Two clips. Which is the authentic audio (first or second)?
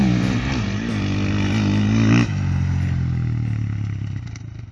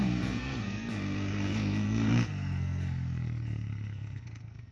first